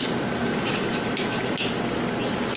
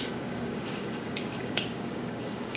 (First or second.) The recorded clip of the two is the first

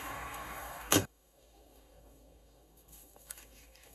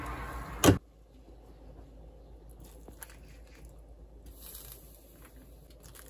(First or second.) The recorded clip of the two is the second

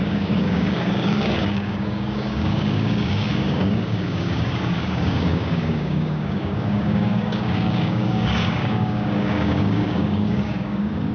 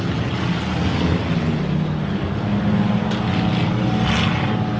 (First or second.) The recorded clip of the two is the second